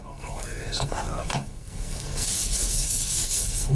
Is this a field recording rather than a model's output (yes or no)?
no